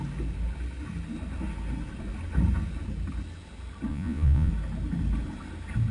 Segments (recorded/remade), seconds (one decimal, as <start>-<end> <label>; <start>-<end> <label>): 0.0-3.9 recorded; 3.9-4.5 remade; 4.5-5.9 recorded